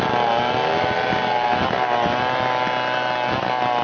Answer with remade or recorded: recorded